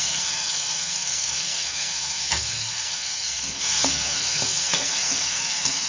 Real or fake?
fake